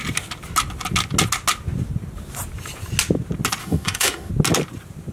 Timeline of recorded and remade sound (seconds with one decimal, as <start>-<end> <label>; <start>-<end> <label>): 0.0-3.6 recorded; 3.6-4.3 remade; 4.3-5.1 recorded